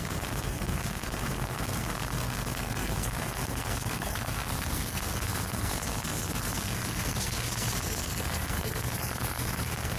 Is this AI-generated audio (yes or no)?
yes